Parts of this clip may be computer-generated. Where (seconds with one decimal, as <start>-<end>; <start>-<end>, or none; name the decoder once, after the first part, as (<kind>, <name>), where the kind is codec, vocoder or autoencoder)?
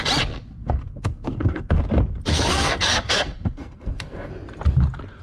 0.6-1.7 (codec, SNAC); 2.3-4.3